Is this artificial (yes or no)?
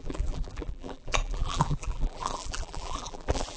yes